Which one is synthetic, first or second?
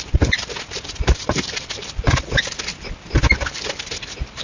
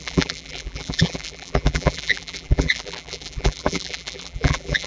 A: second